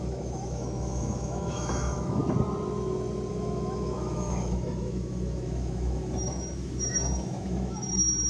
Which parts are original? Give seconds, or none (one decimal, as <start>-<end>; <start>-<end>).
2.2-3.3